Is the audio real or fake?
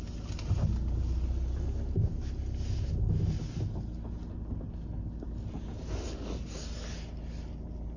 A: real